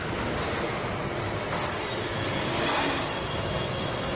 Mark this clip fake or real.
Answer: real